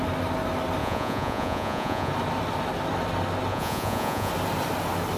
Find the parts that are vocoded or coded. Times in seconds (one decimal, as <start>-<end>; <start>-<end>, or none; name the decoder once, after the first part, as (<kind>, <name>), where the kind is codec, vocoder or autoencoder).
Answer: 0.8-2.1 (vocoder, Vocos); 3.5-4.3